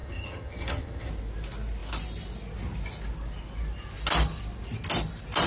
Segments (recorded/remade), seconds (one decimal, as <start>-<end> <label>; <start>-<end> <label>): 0.0-1.1 remade; 1.1-5.5 recorded